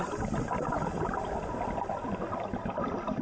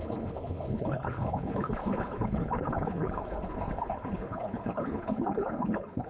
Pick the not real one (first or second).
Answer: second